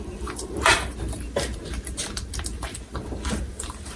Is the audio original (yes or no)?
no